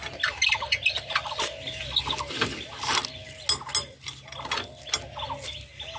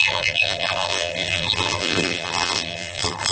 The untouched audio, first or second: first